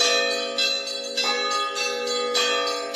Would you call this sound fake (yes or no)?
no